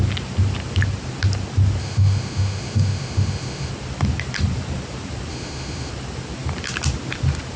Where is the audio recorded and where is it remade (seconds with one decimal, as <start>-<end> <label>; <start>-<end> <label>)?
0.0-1.8 recorded; 1.8-3.7 remade; 3.7-5.3 recorded; 5.3-5.9 remade; 5.9-7.6 recorded